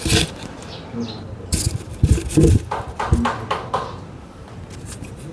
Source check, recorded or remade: recorded